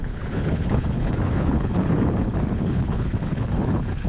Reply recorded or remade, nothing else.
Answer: remade